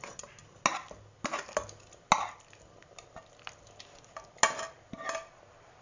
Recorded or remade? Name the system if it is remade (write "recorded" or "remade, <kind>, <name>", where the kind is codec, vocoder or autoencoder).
recorded